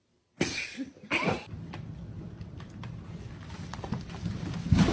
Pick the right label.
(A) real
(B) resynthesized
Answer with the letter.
A